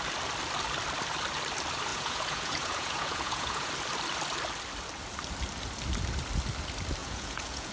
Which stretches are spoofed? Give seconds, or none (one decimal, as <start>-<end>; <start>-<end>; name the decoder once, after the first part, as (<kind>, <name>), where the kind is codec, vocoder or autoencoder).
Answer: 1.9-3.7 (vocoder, Vocos); 7.0-7.7